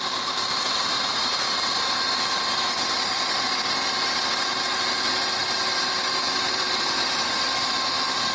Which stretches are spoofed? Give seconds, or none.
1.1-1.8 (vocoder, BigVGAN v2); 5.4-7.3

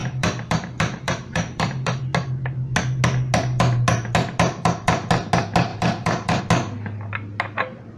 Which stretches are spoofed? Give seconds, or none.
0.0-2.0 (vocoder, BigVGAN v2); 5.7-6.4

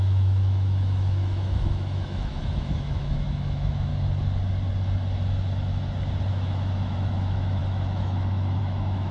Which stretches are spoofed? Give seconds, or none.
0.0-3.9 (autoencoder, DAC-VAE); 6.3-9.1

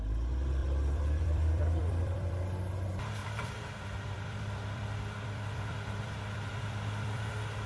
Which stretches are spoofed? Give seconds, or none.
0.6-2.4 (vocoder, BigVGAN v2); 3.2-7.3